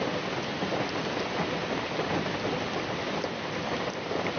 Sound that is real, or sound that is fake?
real